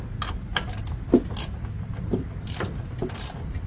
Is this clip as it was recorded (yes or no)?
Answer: yes